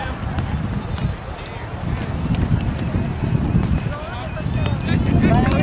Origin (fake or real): real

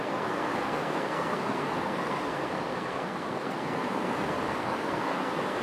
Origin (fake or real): fake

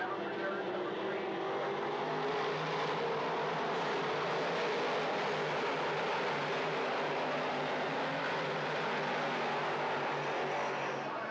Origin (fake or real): real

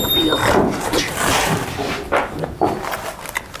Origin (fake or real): real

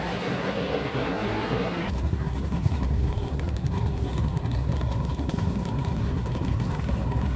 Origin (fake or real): fake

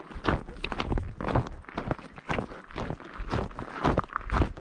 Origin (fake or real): real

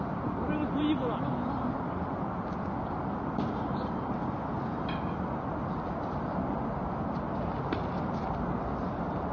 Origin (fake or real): real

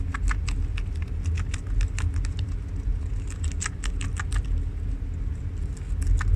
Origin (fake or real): real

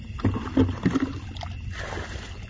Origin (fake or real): real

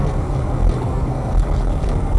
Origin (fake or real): fake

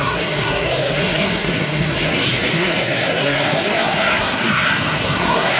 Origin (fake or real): fake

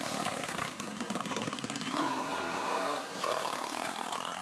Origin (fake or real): fake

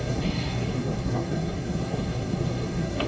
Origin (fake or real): fake